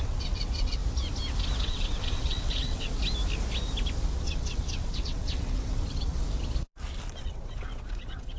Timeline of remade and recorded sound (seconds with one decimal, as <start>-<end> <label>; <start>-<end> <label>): 0.0-0.8 remade; 0.8-1.6 recorded; 1.6-3.0 remade; 3.0-4.3 recorded; 4.3-6.1 remade; 6.1-7.2 recorded; 7.2-8.4 remade